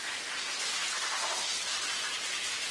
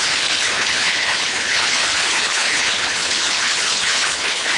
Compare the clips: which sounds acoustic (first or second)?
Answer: first